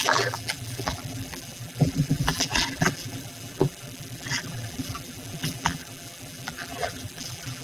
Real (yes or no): no